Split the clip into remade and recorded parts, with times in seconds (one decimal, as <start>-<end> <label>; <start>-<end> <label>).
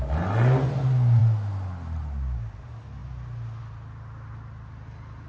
0.0-5.3 recorded